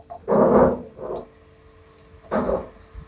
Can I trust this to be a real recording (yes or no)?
yes